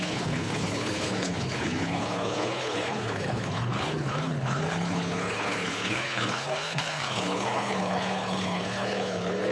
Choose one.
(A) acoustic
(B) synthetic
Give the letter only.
B